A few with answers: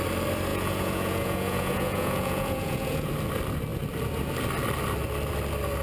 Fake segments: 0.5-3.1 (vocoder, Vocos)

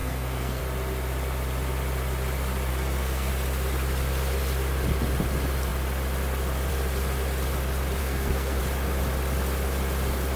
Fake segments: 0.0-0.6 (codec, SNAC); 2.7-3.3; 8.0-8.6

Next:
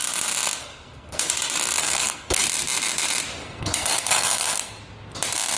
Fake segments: 0.6-1.3 (codec, SNAC); 1.8-2.4; 3.4-4.8

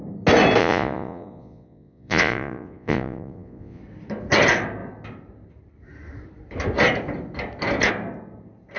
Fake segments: 0.6-3.8 (vocoder, Vocos)